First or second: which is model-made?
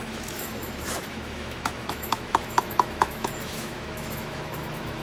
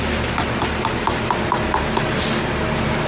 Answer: first